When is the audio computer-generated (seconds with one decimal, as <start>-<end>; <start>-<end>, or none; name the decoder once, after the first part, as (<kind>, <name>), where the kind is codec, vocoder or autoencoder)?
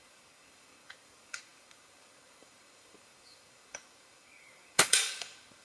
0.0-5.6 (codec, DAC)